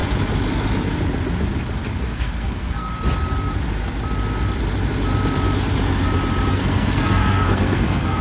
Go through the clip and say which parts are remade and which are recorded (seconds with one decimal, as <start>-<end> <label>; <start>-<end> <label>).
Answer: 0.0-2.0 recorded; 2.0-2.9 remade; 2.9-6.5 recorded; 6.5-8.2 remade